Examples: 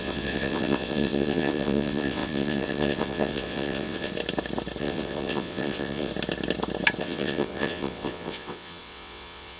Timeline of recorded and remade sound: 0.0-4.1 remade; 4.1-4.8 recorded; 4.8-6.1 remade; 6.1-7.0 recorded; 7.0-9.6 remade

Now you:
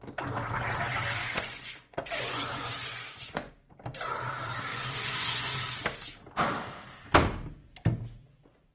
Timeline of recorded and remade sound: 0.0-1.2 recorded; 1.2-3.5 remade; 3.5-4.7 recorded; 4.7-5.5 remade; 5.5-8.7 recorded

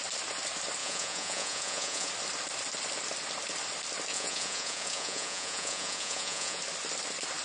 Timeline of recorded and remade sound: 0.0-0.8 recorded; 0.8-2.1 remade; 2.1-4.1 recorded; 4.1-6.6 remade; 6.6-7.4 recorded

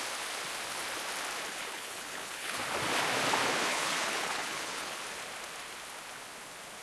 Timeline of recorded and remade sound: 0.0-1.5 recorded; 1.5-2.6 remade; 2.6-3.7 recorded; 3.7-5.0 remade; 5.0-6.8 recorded

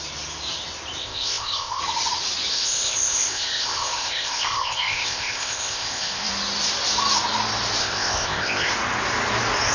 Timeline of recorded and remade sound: 0.0-1.0 recorded; 1.0-1.8 remade; 1.8-2.5 recorded; 2.5-6.3 remade; 6.3-7.8 recorded; 7.8-8.7 remade; 8.7-9.7 recorded

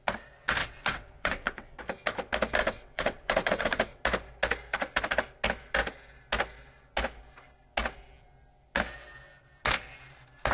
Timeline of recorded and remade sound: 0.0-0.6 recorded; 0.6-1.8 remade; 1.8-2.6 recorded; 2.6-4.0 remade; 4.0-10.5 recorded

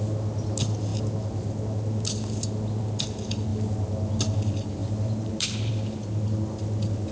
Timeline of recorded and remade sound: 0.0-4.8 recorded; 4.8-5.7 remade; 5.7-7.1 recorded